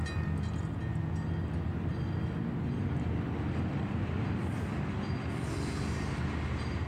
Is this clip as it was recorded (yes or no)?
yes